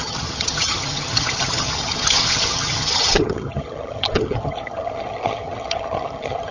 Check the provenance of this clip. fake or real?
fake